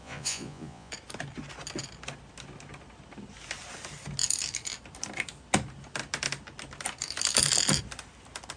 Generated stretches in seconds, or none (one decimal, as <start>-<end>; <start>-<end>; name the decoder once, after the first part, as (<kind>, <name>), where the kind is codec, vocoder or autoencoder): 0.0-0.9 (vocoder, Vocos)